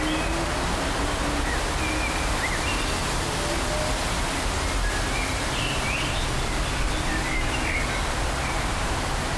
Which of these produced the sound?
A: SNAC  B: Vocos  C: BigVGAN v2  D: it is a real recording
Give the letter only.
D